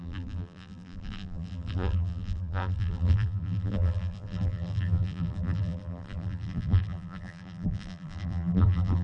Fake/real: fake